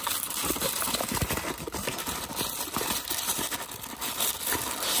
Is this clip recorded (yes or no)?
yes